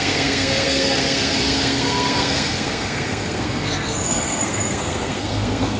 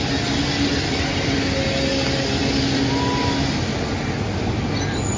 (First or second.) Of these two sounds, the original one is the second